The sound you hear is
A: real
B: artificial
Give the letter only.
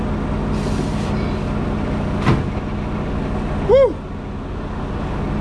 A